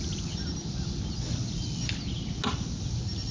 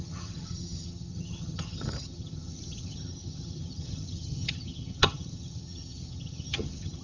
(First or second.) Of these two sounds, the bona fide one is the first